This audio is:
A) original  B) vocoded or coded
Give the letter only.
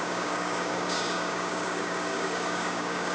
B